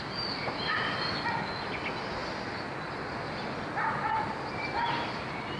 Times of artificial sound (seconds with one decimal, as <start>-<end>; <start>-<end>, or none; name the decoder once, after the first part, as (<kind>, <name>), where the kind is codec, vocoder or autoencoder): none